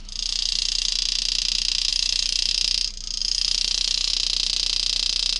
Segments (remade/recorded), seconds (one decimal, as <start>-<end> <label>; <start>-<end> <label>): 0.0-0.9 remade; 0.9-1.9 recorded; 1.9-2.5 remade; 2.5-3.2 recorded; 3.2-4.1 remade; 4.1-5.4 recorded